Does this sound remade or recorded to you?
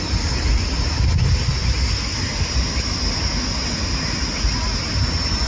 recorded